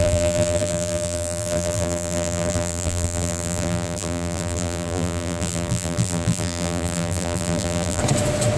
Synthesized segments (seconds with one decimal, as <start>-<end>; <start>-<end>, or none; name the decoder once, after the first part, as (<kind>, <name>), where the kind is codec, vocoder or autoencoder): 0.0-8.0 (vocoder, BigVGAN v2)